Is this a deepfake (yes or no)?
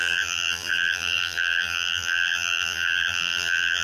yes